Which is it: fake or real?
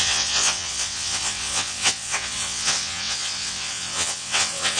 fake